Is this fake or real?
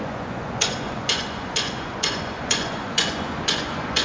fake